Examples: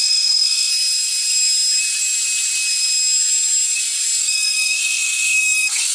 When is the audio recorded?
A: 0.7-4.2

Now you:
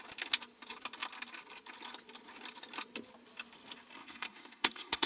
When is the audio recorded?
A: 0.0-4.0

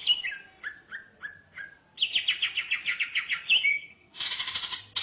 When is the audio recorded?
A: 0.0-3.7; 4.3-5.0

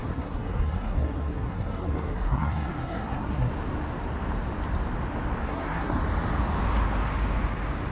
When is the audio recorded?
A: 3.5-5.4; 6.0-7.9

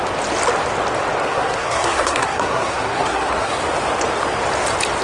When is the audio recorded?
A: 0.0-1.2; 3.6-5.0

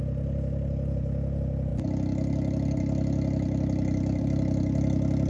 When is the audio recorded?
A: 0.0-5.3

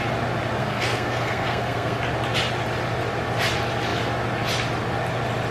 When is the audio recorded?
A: 0.0-0.6; 2.0-5.5